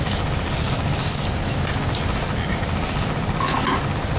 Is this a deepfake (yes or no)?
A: no